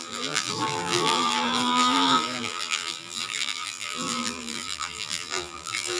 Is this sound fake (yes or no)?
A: yes